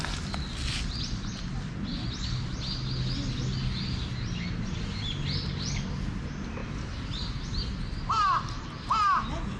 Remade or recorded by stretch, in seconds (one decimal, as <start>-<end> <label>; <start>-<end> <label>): 0.0-9.6 recorded